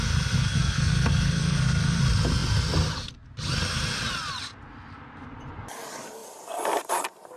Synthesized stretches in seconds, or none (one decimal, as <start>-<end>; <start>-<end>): 0.4-2.0